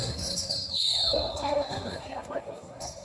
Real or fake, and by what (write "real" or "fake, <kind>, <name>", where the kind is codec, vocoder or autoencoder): fake, codec, SNAC